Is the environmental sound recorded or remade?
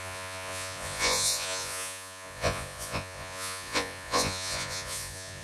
remade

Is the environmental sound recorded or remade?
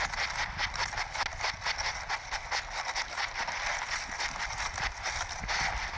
recorded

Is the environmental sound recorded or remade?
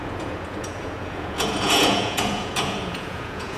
remade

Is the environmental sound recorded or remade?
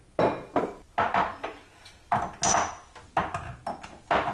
recorded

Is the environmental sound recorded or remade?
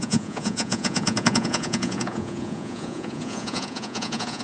remade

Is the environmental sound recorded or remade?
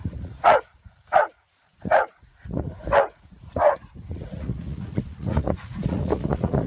remade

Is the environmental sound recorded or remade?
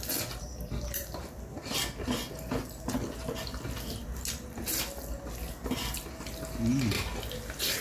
recorded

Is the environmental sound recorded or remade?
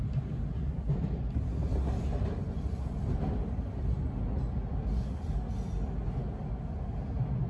recorded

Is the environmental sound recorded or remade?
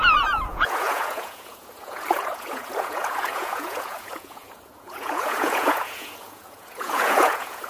remade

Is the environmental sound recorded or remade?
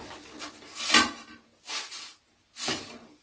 recorded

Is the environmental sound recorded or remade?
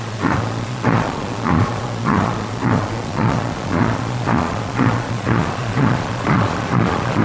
remade